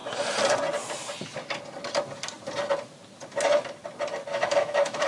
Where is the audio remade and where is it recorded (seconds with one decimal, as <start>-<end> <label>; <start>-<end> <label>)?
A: 0.0-4.3 recorded; 4.3-5.1 remade